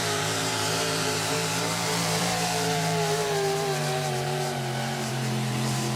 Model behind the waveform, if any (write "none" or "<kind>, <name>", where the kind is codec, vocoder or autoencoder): vocoder, BigVGAN v2